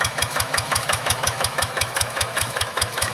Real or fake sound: fake